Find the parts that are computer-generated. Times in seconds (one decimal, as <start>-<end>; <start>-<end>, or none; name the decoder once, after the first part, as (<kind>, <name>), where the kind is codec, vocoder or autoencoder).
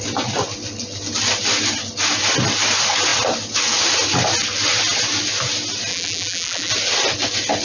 5.9-6.7 (vocoder, BigVGAN v2)